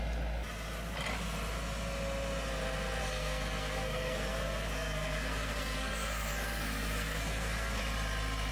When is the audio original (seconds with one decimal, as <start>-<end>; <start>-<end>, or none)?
0.0-3.0; 7.8-8.5